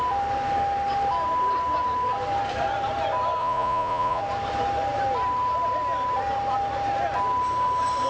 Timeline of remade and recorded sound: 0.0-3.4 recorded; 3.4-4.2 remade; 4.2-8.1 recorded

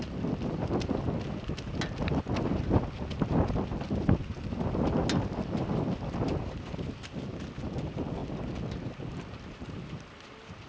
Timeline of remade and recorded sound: 0.0-10.7 recorded

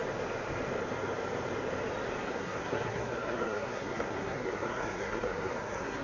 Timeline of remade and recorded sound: 0.0-2.2 recorded; 2.2-6.0 remade